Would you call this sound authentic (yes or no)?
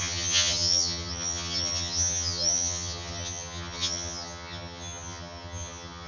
no